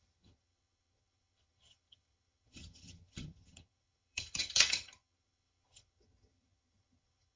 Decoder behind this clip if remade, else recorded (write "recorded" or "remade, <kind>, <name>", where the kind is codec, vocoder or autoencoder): remade, vocoder, HiFi-GAN